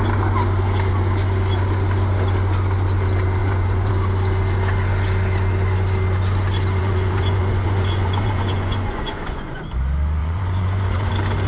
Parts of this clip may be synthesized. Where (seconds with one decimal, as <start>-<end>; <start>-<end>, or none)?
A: 3.4-3.9; 6.8-9.6; 10.2-11.1